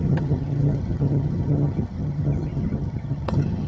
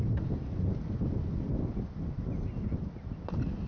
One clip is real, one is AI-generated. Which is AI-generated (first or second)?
first